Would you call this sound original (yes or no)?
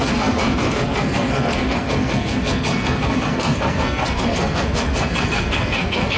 no